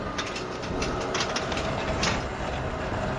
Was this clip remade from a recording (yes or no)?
no